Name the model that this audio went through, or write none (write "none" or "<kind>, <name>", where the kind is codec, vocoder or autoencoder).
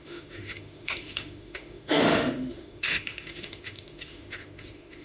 autoencoder, DAC-VAE